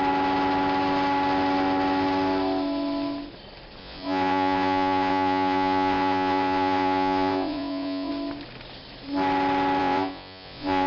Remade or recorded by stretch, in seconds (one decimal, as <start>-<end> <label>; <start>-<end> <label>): 0.0-3.8 recorded; 3.8-8.1 remade; 8.1-9.8 recorded; 9.8-10.9 remade